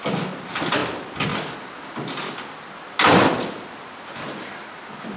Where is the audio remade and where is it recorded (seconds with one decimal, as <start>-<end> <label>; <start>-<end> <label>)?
0.0-5.2 recorded